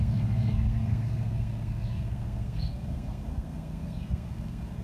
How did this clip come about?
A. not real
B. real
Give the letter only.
A